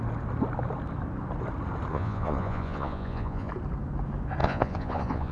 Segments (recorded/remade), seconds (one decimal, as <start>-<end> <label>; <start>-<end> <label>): 0.0-1.9 recorded; 1.9-3.5 remade; 3.5-4.4 recorded; 4.4-5.3 remade